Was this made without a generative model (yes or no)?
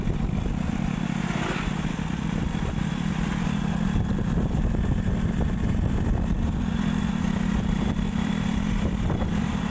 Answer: no